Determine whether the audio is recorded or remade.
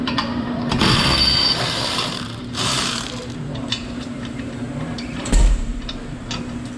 remade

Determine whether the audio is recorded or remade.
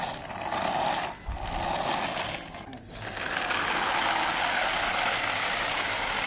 recorded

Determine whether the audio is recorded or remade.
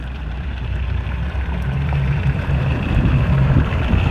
remade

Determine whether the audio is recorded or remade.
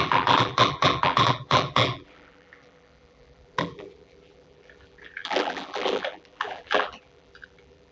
remade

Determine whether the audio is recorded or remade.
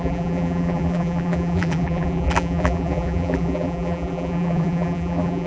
remade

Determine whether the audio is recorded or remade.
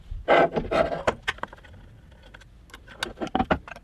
recorded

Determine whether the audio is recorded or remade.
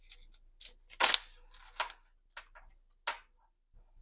recorded